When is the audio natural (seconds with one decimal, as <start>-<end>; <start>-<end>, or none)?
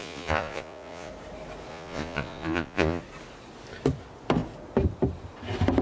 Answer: 1.1-1.7; 3.0-5.8